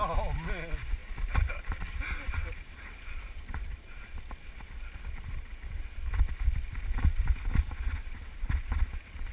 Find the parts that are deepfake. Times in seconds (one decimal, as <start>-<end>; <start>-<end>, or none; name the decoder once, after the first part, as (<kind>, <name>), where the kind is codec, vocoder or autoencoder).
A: 1.0-4.1 (vocoder, BigVGAN v2)